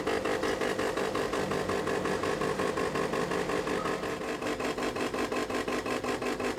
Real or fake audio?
real